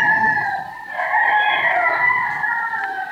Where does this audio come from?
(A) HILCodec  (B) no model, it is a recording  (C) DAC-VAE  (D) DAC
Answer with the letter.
B